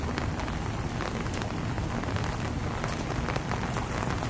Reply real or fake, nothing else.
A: real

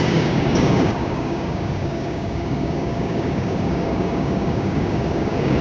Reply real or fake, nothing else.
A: fake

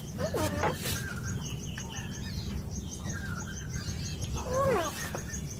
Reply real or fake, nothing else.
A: real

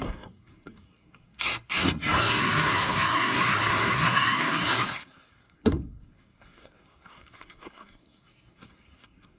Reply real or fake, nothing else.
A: fake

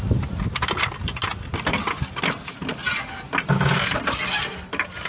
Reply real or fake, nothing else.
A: real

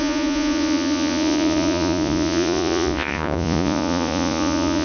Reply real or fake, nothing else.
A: fake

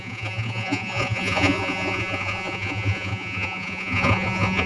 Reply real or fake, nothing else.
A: fake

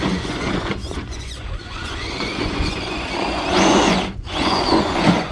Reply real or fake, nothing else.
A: fake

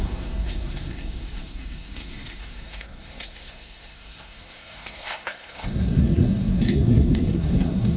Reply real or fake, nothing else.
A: fake